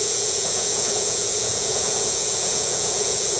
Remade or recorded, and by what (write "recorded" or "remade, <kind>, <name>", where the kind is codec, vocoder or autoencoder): remade, vocoder, Vocos